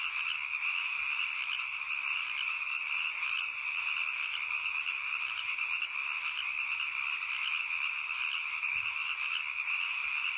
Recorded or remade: recorded